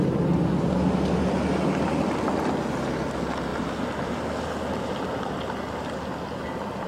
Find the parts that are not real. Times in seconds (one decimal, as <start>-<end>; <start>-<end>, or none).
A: none